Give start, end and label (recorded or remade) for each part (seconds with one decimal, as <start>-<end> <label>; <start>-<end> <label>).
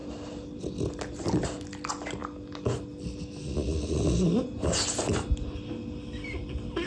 0.0-6.9 recorded